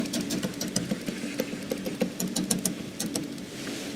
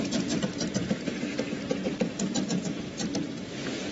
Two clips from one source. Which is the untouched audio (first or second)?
first